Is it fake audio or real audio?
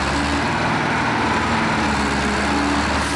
real